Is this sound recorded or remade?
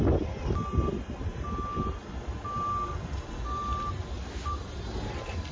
recorded